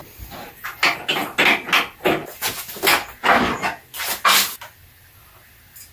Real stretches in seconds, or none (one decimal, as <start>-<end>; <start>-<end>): 0.0-5.9